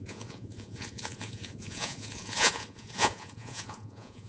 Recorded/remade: remade